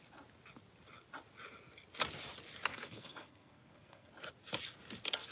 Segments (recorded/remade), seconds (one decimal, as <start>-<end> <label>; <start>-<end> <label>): 0.0-2.7 recorded; 2.7-4.1 remade; 4.1-5.3 recorded